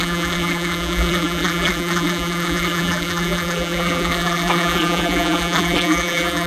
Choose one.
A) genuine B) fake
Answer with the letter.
B